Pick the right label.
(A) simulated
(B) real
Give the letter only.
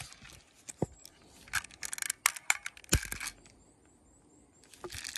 B